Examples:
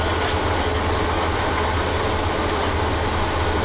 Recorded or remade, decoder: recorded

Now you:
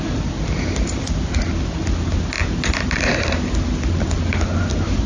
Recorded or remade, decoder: recorded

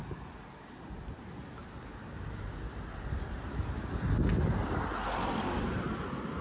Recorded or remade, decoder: recorded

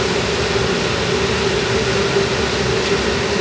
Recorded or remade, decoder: recorded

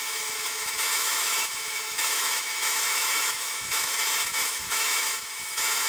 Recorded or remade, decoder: remade, autoencoder, DAC-VAE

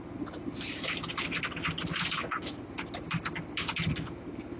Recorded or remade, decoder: recorded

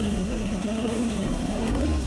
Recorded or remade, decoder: remade, codec, SNAC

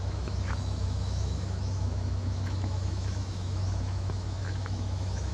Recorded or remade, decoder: remade, autoencoder, DAC-VAE